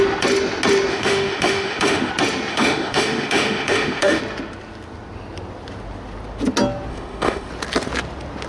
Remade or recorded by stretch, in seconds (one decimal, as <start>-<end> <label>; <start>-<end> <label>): 0.0-0.9 recorded; 0.9-2.1 remade; 2.1-2.5 recorded; 2.5-4.2 remade; 4.2-6.9 recorded; 6.9-7.5 remade; 7.5-8.5 recorded